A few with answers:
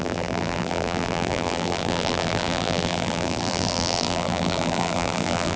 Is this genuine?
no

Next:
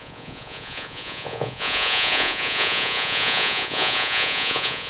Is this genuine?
no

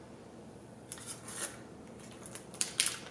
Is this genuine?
no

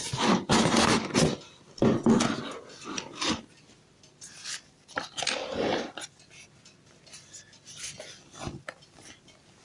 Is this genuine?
yes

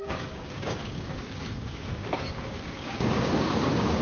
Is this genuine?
no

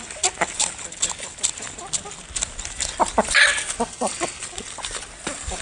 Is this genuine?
yes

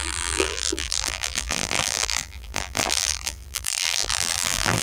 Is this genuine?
no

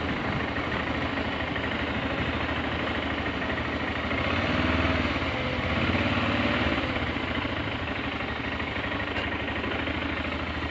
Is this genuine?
yes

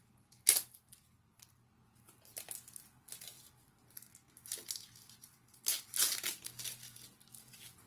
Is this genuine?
yes